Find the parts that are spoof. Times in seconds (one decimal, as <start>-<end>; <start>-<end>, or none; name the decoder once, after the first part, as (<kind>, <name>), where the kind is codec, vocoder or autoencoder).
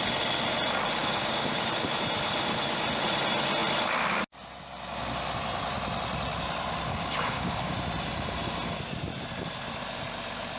1.0-1.7 (codec, DAC); 6.9-7.7